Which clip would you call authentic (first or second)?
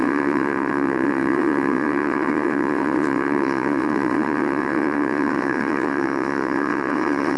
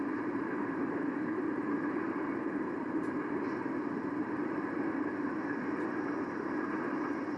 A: second